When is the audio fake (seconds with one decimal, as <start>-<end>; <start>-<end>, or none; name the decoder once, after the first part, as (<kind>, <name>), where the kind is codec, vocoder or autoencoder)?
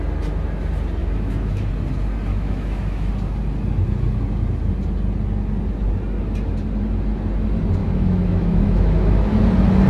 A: 1.0-1.7 (autoencoder, DAC-VAE); 2.3-3.1; 7.8-9.4